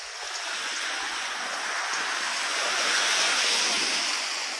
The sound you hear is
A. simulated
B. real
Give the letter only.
A